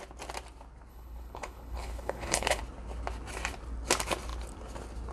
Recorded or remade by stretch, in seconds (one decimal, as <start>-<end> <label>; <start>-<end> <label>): 0.0-0.9 recorded; 0.9-2.6 remade; 2.6-5.1 recorded